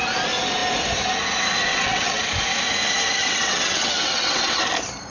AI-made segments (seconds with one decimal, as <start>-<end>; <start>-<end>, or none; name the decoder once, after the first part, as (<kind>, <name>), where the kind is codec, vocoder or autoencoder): 1.7-2.2 (vocoder, WaveNeXt); 3.2-4.6